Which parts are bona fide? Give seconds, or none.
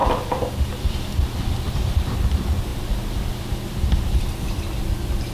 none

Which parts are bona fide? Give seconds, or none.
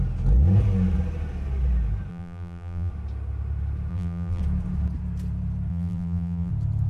0.0-2.1; 2.9-3.9; 4.4-5.7; 6.5-6.9